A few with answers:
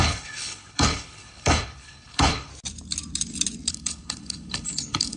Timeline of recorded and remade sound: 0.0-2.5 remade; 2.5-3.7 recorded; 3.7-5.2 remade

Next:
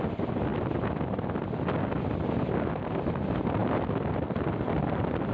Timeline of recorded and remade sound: 0.0-5.3 recorded

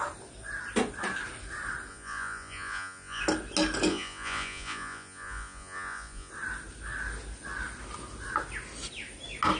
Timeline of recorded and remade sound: 0.0-1.9 recorded; 1.9-3.2 remade; 3.2-3.9 recorded; 3.9-6.3 remade; 6.3-9.6 recorded

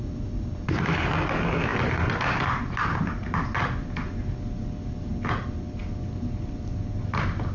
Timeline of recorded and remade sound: 0.0-7.5 recorded

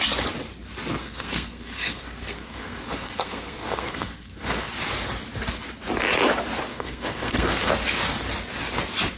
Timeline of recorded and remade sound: 0.0-1.0 recorded; 1.0-4.7 remade; 4.7-6.7 recorded; 6.7-7.7 remade; 7.7-9.2 recorded